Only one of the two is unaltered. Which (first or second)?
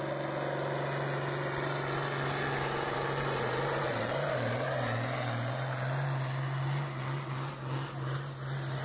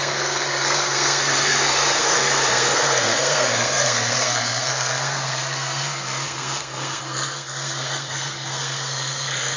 first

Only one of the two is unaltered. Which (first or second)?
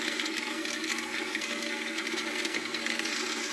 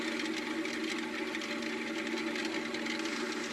second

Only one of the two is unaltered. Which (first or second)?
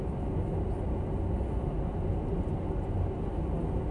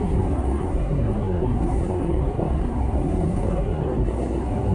first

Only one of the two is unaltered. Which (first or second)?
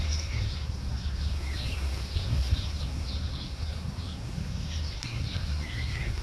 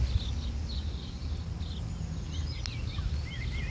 second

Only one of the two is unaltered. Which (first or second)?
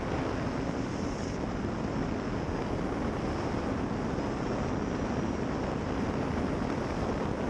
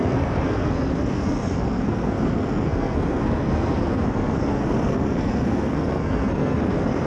first